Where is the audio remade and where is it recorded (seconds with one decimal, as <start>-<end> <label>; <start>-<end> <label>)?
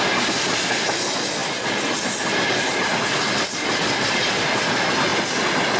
0.0-5.8 recorded